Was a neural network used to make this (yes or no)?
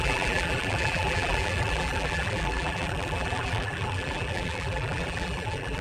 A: yes